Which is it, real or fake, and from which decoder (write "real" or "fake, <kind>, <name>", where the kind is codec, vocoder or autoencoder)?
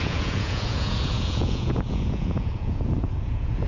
fake, vocoder, Vocos